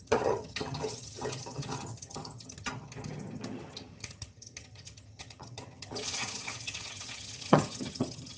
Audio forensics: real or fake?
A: fake